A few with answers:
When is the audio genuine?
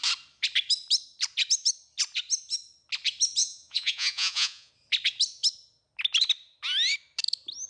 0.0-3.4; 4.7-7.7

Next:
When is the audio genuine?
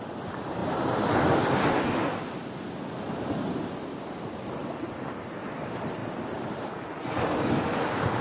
0.0-4.6; 5.6-8.2